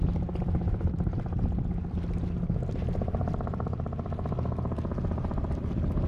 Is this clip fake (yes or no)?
no